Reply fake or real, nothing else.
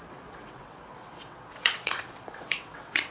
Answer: fake